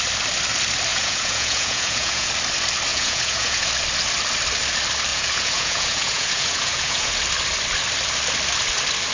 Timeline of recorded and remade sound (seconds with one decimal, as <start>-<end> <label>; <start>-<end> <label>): 0.0-0.9 recorded; 0.9-2.3 remade; 2.3-2.9 recorded; 2.9-3.7 remade; 3.7-5.1 recorded; 5.1-7.1 remade; 7.1-9.1 recorded